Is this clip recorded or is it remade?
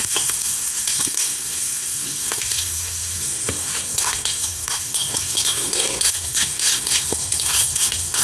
remade